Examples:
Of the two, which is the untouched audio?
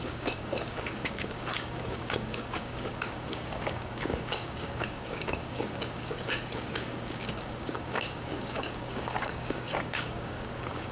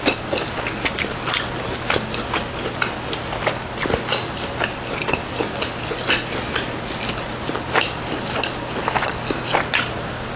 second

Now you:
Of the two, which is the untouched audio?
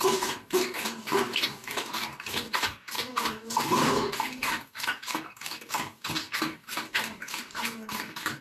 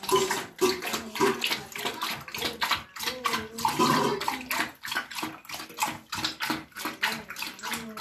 second